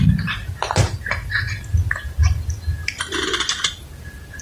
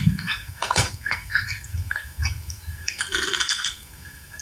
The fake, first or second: second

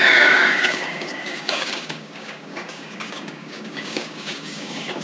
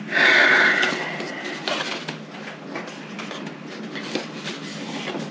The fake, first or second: first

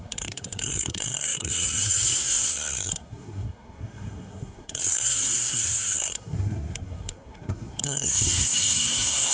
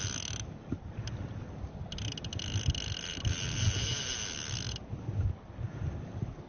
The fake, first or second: first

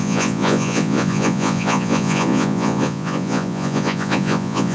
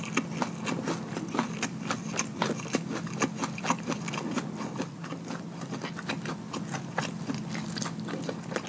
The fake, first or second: first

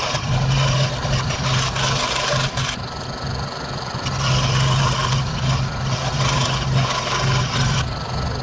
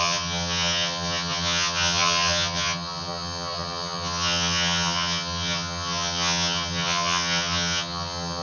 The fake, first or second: second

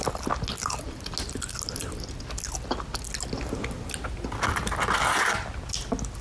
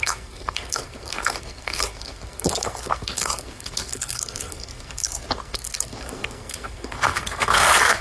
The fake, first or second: second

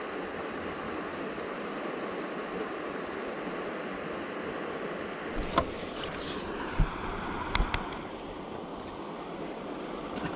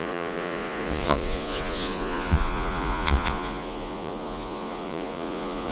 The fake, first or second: second